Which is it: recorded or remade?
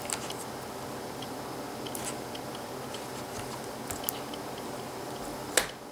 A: recorded